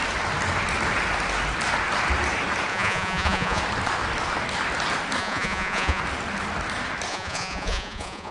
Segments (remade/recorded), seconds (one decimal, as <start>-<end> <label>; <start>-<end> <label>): 0.0-2.7 recorded; 2.7-3.6 remade; 3.6-5.2 recorded; 5.2-6.0 remade; 6.0-7.1 recorded; 7.1-8.3 remade